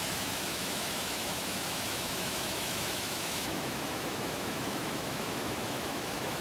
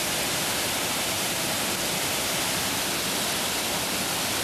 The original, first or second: second